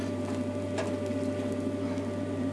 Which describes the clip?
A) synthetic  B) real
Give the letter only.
B